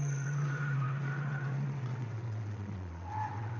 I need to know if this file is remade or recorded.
remade